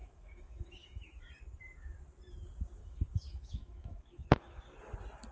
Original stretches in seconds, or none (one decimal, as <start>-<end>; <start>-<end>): 1.3-2.8; 4.6-5.3